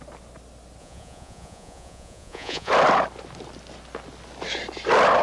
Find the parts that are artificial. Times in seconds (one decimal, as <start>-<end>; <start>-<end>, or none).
0.8-2.7